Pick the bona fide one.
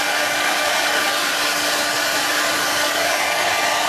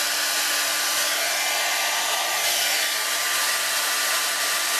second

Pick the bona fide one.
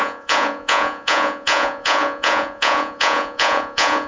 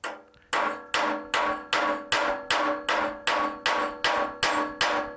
second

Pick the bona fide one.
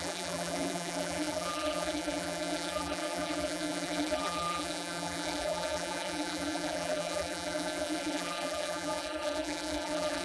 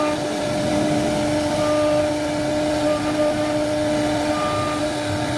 second